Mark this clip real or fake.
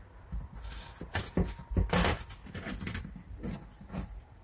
real